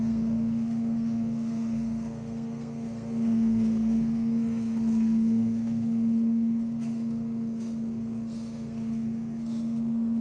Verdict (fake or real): fake